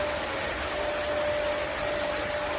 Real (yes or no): yes